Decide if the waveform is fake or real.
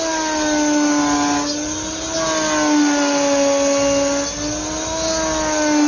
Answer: real